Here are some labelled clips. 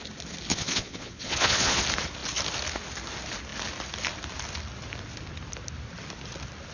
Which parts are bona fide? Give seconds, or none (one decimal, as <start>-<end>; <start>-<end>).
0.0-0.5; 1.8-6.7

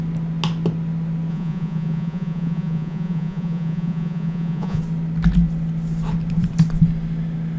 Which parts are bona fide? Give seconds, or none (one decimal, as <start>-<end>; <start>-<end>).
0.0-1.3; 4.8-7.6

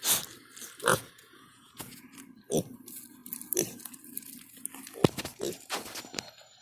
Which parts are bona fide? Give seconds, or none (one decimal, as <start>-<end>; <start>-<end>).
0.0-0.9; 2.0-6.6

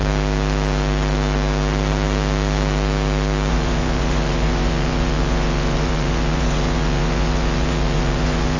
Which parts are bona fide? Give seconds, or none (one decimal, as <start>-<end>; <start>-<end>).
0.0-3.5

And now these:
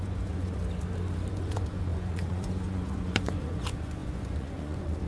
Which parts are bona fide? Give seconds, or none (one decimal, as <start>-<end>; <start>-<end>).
0.6-1.3

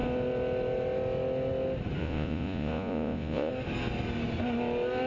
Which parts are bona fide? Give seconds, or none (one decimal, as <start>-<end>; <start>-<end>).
0.0-2.0; 3.5-5.1